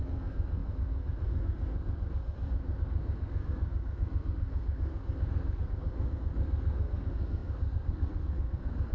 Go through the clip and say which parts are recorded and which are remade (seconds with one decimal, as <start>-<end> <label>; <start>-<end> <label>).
0.0-8.9 remade